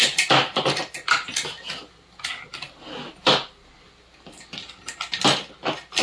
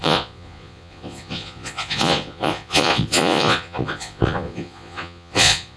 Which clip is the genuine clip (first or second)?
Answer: first